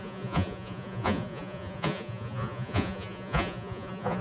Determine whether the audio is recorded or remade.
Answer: remade